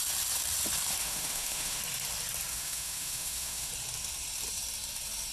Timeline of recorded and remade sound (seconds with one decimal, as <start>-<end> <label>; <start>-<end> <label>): 0.0-1.0 recorded; 1.0-1.8 remade; 1.8-2.5 recorded; 2.5-3.7 remade; 3.7-5.3 recorded